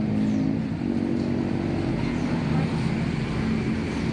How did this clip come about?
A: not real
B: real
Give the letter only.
B